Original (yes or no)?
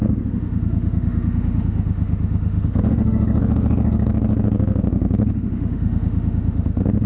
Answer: no